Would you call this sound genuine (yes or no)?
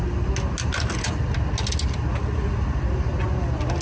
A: yes